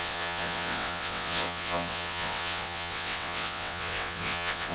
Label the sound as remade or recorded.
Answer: remade